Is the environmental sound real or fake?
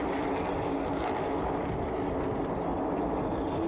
real